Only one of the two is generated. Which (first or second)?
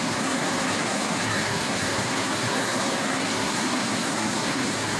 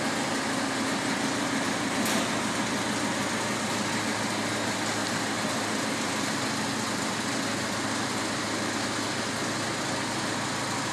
first